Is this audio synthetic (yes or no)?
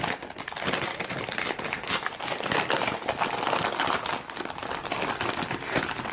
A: no